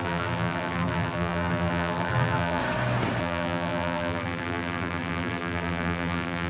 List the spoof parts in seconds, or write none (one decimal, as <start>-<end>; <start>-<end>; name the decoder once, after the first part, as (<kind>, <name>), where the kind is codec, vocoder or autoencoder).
0.0-2.6 (vocoder, BigVGAN v2); 3.2-6.5